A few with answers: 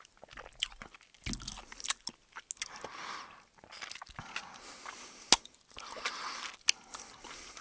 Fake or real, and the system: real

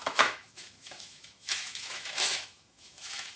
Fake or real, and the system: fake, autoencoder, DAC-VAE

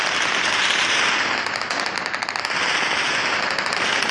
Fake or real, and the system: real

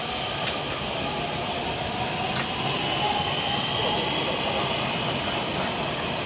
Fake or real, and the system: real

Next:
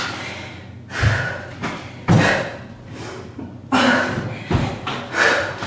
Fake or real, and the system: real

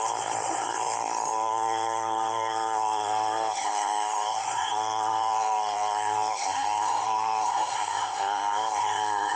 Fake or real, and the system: fake, codec, SNAC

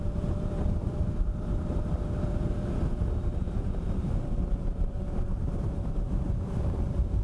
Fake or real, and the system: fake, vocoder, BigVGAN v2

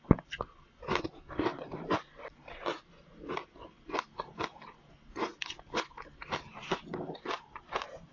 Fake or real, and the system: real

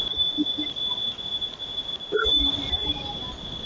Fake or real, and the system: real